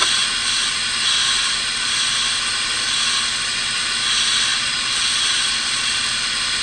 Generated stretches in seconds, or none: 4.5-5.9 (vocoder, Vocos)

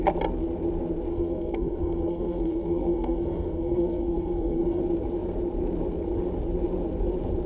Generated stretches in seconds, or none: 1.1-4.8 (codec, SNAC)